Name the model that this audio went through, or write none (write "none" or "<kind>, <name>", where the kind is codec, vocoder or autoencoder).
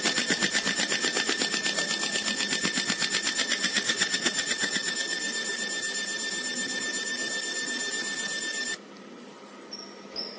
none